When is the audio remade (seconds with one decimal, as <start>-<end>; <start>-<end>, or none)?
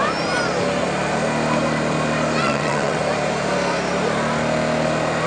2.4-3.0